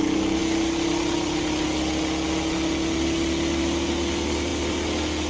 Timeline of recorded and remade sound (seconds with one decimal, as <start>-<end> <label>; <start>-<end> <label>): 0.0-5.3 recorded